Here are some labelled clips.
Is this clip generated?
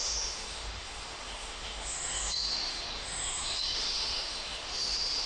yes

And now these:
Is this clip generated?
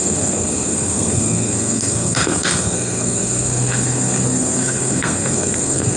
yes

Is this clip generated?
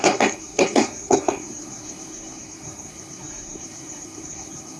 yes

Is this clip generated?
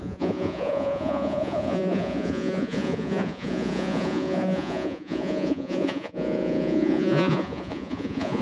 yes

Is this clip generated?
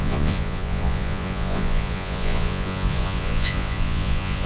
yes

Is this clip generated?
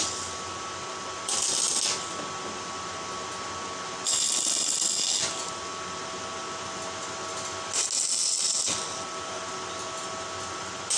no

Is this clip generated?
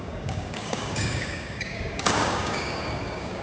yes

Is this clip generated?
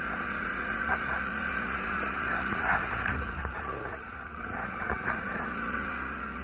yes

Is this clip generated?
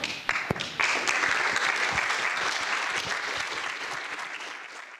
no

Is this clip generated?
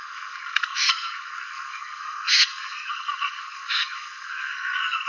yes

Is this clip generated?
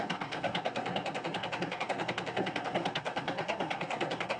yes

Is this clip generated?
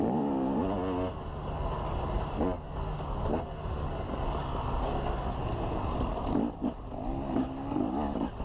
no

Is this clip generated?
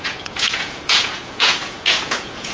yes